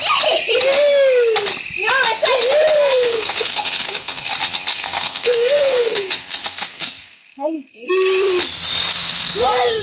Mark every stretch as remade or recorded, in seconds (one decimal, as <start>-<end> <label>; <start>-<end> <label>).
0.0-2.8 recorded; 2.8-4.3 remade; 4.3-4.7 recorded; 4.7-7.9 remade; 7.9-8.9 recorded; 8.9-9.8 remade